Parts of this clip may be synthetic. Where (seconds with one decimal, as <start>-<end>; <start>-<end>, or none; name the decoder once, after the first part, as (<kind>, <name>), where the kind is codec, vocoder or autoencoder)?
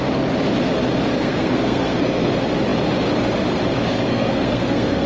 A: 1.1-2.3 (codec, SNAC); 4.1-5.1